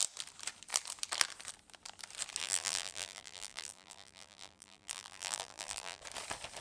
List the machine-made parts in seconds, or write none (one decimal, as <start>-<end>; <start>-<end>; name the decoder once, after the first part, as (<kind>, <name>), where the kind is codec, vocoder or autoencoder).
2.4-6.0 (vocoder, BigVGAN v2)